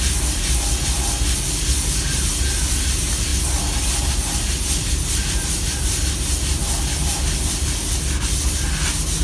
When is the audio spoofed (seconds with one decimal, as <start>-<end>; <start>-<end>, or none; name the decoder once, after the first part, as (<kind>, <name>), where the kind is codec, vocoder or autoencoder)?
none